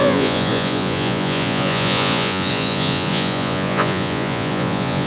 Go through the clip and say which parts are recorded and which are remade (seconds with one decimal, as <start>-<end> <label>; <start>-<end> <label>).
0.0-5.1 remade